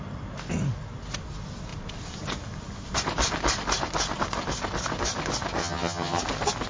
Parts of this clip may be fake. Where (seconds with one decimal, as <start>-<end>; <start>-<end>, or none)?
5.6-6.2